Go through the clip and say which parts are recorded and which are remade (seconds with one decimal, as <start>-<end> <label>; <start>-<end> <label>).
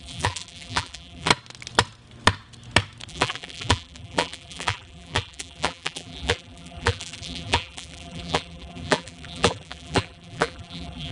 0.0-1.3 remade; 1.3-3.1 recorded; 3.1-11.1 remade